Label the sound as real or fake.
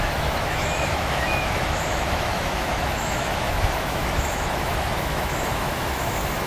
fake